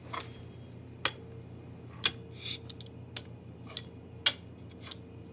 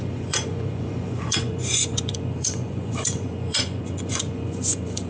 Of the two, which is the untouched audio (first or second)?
first